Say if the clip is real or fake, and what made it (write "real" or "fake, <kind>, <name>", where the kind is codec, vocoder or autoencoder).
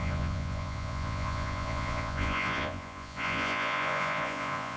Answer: fake, vocoder, Vocos